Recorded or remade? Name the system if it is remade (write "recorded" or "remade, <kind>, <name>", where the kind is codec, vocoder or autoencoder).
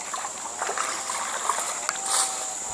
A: recorded